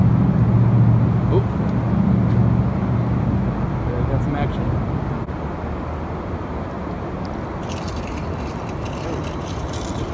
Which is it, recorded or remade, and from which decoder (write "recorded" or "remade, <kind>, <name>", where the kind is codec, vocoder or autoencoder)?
recorded